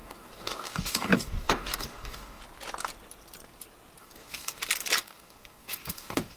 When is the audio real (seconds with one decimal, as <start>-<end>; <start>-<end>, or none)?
2.4-4.0; 4.6-5.0